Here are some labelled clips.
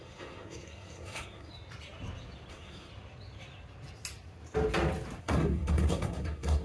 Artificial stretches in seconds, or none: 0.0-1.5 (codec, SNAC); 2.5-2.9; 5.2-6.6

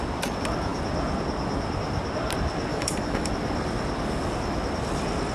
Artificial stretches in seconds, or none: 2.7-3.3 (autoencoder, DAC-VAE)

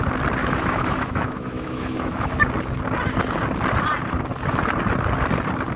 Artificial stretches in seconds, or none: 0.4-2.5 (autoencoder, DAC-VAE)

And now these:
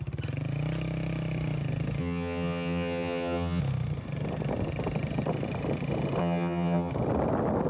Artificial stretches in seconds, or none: 2.0-3.6 (vocoder, HiFi-GAN); 6.2-6.9

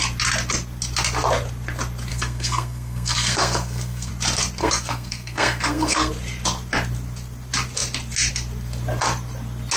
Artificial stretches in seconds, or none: 2.1-4.1 (codec, SNAC); 4.6-6.1

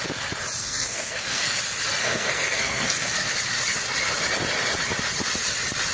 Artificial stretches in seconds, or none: 0.6-1.6 (codec, SNAC); 2.0-3.3